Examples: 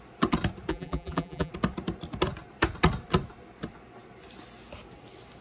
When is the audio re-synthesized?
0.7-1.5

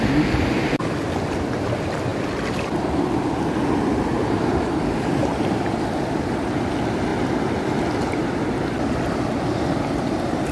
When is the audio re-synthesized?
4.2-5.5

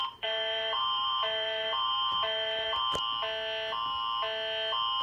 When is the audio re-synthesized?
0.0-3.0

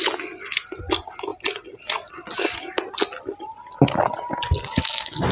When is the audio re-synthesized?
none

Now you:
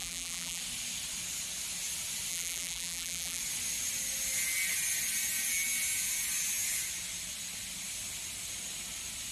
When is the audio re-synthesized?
0.0-0.6; 2.3-3.4

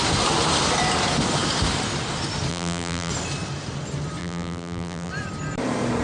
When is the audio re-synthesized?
2.5-3.1; 4.2-5.1

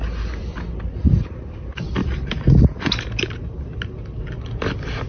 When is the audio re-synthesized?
2.0-4.3